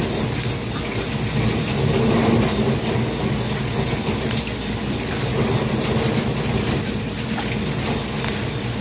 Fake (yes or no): no